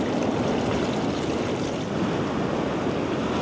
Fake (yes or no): no